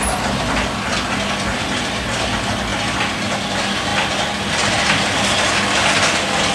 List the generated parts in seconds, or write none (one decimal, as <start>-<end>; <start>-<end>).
none